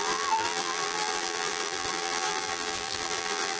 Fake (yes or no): yes